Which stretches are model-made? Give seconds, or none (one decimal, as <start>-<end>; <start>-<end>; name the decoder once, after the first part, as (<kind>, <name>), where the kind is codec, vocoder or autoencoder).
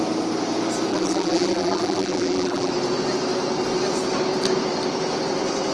0.9-2.7 (vocoder, BigVGAN v2)